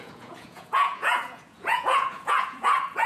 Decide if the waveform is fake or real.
fake